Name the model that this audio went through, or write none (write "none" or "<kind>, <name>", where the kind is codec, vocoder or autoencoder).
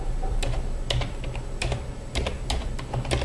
none